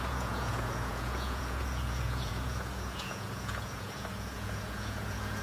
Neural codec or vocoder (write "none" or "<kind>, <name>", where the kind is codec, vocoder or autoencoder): vocoder, Vocos